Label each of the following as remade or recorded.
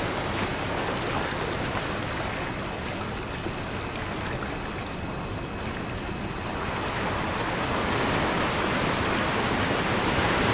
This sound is recorded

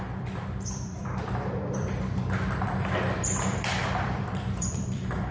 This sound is remade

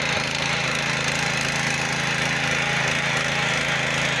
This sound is recorded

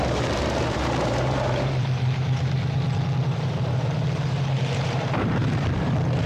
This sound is remade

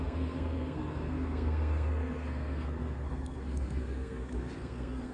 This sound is remade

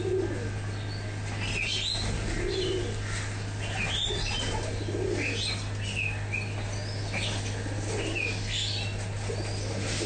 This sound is recorded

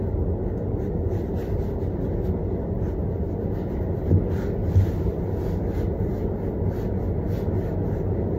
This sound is recorded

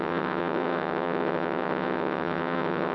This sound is remade